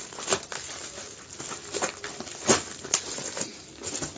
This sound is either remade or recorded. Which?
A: recorded